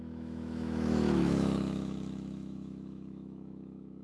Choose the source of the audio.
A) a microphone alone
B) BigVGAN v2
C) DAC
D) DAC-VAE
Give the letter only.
D